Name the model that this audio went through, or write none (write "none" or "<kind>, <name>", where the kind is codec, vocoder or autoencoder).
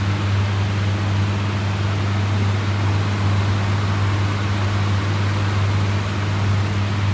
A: none